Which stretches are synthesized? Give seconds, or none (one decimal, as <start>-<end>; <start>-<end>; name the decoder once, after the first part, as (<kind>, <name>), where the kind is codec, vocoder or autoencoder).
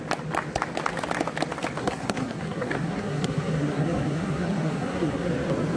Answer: 1.8-5.3 (codec, SNAC)